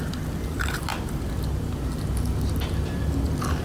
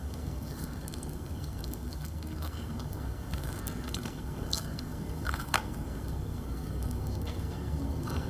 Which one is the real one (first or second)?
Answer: first